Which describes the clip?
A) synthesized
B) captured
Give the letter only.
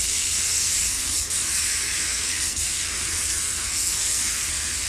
A